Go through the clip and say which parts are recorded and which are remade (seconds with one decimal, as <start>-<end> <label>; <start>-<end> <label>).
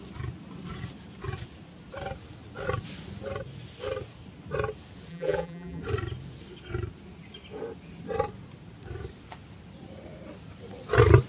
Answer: 0.0-5.1 recorded; 5.1-5.8 remade; 5.8-11.3 recorded